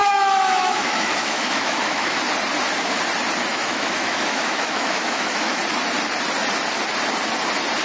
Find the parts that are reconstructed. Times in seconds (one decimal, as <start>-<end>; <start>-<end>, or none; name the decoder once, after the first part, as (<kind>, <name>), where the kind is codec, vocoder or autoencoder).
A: 0.0-2.2 (autoencoder, DAC-VAE); 3.5-5.6

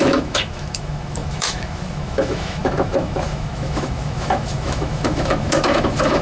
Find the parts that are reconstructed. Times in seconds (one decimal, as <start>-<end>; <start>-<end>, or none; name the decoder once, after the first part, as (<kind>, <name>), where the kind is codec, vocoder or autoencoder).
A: 0.0-6.2 (autoencoder, DAC-VAE)

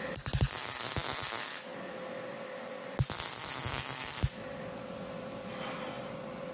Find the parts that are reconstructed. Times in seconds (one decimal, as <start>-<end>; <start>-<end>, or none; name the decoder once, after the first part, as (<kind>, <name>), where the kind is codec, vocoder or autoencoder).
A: none

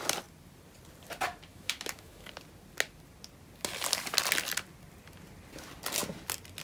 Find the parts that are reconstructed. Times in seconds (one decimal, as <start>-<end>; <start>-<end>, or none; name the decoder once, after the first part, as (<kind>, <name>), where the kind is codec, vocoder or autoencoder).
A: 1.5-2.3 (autoencoder, DAC-VAE)

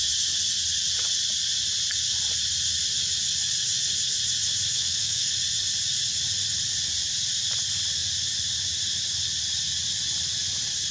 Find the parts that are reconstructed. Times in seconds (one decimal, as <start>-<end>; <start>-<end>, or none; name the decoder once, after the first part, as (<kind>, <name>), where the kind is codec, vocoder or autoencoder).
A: 4.7-5.3 (autoencoder, DAC-VAE)

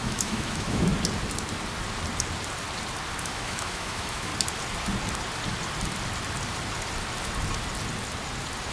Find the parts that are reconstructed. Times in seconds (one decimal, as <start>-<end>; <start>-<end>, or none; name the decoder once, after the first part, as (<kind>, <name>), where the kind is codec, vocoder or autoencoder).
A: 0.0-0.9 (autoencoder, DAC-VAE); 3.2-4.3